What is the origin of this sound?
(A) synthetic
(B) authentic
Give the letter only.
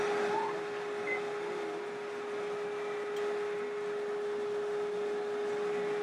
B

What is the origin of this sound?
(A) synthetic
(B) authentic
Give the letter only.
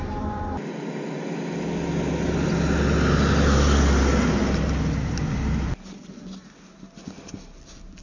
B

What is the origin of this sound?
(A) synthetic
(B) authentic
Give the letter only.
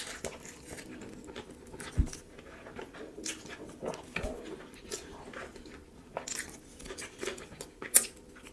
B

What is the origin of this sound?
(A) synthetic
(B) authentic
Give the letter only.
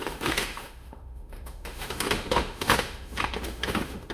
A